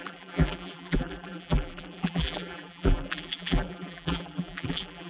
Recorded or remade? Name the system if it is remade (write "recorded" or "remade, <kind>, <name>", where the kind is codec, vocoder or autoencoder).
remade, vocoder, BigVGAN v2